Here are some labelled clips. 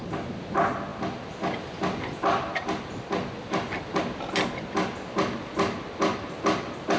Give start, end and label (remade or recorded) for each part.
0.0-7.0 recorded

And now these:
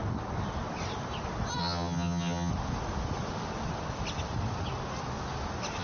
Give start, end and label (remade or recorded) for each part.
0.0-1.6 recorded; 1.6-2.5 remade; 2.5-5.8 recorded

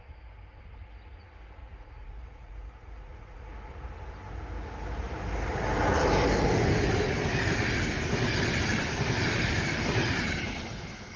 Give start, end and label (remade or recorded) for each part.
0.0-1.6 recorded; 1.6-3.5 remade; 3.5-11.2 recorded

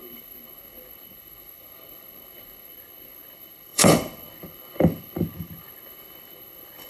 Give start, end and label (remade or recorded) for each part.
0.0-6.9 remade

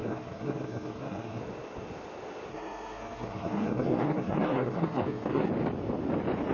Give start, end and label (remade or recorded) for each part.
0.0-1.4 remade; 1.4-2.5 recorded; 2.5-5.5 remade; 5.5-6.5 recorded

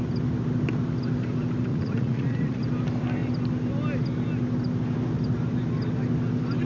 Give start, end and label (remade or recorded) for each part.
0.0-1.7 recorded; 1.7-2.6 remade; 2.6-6.6 recorded

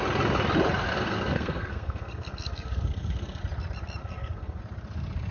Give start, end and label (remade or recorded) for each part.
0.0-0.9 recorded; 0.9-3.4 remade; 3.4-4.0 recorded; 4.0-4.6 remade; 4.6-5.3 recorded

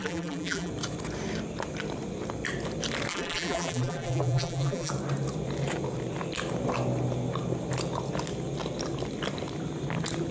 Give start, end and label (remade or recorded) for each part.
0.0-0.7 remade; 0.7-3.1 recorded; 3.1-4.9 remade; 4.9-10.3 recorded